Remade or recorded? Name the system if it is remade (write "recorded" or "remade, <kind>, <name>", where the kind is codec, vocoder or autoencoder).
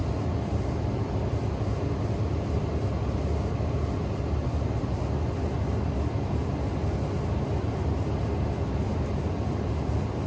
recorded